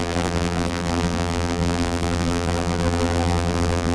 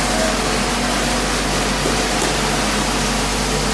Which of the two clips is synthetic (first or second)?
first